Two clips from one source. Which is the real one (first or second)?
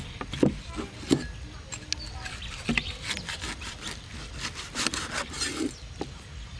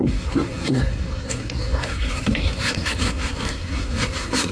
first